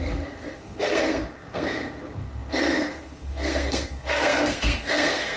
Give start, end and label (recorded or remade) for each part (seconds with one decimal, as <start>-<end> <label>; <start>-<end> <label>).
0.0-5.4 remade